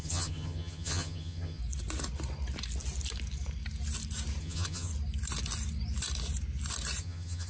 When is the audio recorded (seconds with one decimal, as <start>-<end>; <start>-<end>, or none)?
1.6-4.4; 4.9-7.0